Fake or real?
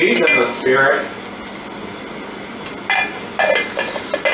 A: real